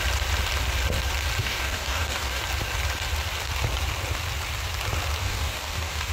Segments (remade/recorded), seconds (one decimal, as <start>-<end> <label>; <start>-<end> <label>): 0.0-1.4 recorded; 1.4-2.4 remade; 2.4-5.2 recorded; 5.2-6.1 remade